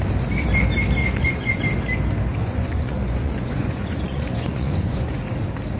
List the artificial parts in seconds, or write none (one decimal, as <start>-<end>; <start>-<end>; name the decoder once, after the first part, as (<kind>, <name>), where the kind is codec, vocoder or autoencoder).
1.0-1.6 (vocoder, Vocos); 2.4-5.2